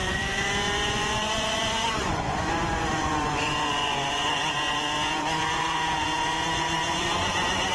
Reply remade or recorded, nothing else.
remade